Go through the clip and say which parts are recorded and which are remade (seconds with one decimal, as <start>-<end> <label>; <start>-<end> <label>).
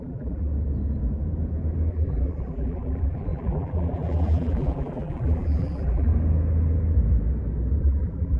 0.0-0.5 remade; 0.5-1.9 recorded; 1.9-6.1 remade; 6.1-7.8 recorded; 7.8-8.4 remade